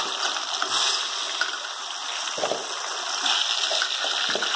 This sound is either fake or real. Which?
real